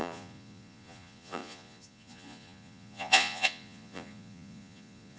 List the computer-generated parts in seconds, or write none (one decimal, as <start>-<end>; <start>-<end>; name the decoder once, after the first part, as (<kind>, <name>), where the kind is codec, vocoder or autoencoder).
0.0-5.2 (vocoder, Vocos)